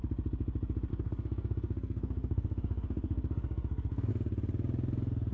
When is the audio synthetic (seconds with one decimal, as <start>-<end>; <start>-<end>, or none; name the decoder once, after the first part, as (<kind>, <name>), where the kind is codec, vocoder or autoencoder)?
0.9-4.1 (codec, SNAC)